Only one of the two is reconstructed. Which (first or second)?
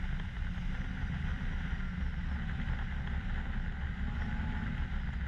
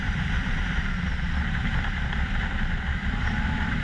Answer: second